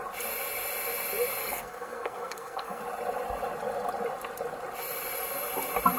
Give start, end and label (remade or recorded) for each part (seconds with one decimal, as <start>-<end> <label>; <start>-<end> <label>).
0.0-1.4 recorded; 1.4-2.8 remade; 2.8-6.0 recorded